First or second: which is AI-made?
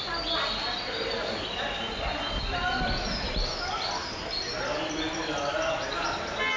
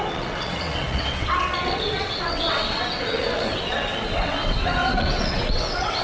second